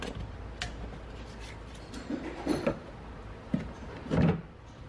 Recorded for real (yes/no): yes